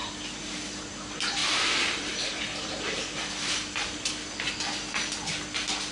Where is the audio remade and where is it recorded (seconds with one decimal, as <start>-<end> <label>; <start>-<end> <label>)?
0.0-1.4 recorded; 1.4-4.1 remade; 4.1-5.9 recorded